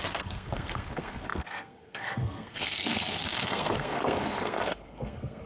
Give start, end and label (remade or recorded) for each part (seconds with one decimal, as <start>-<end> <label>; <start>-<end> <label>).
0.0-5.5 remade